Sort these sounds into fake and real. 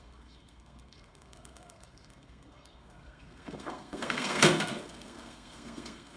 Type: fake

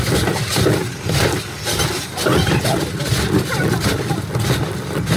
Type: real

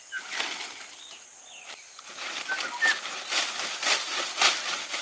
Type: real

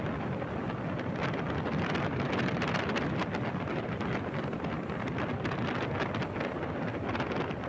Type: real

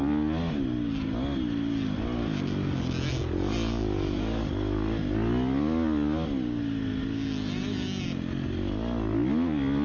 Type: real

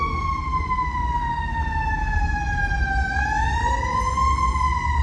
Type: real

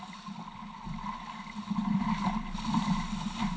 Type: real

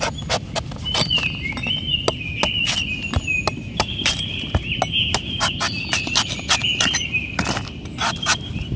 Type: real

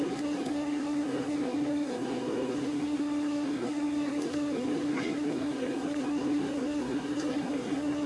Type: fake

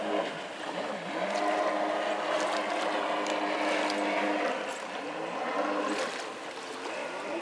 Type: real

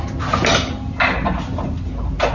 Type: real